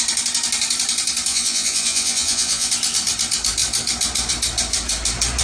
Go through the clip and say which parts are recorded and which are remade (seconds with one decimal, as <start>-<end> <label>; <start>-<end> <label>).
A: 0.0-1.3 recorded; 1.3-2.7 remade; 2.7-5.4 recorded

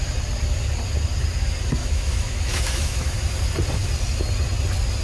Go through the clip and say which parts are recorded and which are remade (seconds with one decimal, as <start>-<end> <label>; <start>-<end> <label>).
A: 0.0-1.8 recorded; 1.8-3.1 remade; 3.1-5.0 recorded